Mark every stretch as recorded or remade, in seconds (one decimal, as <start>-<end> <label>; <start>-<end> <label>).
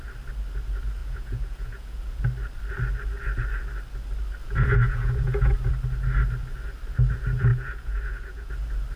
0.0-1.0 recorded; 1.0-2.2 remade; 2.2-4.4 recorded; 4.4-5.7 remade; 5.7-7.5 recorded; 7.5-8.5 remade; 8.5-9.0 recorded